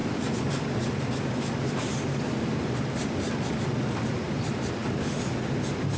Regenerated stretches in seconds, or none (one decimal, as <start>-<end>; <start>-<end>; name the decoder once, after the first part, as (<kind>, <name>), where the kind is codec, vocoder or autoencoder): 0.0-3.6 (vocoder, BigVGAN v2)